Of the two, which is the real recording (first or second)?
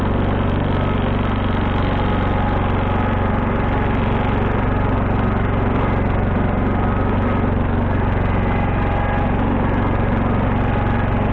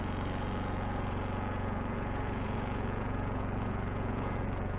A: first